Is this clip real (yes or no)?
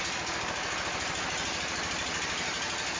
yes